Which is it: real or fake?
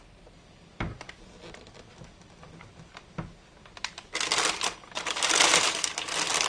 real